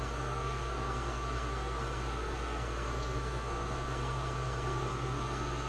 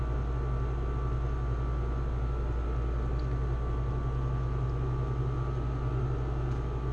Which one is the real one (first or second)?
second